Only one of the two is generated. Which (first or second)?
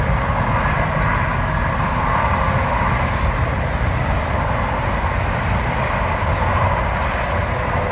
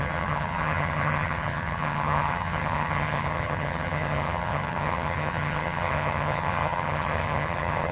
second